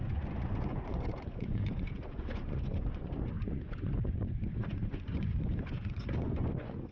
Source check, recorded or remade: remade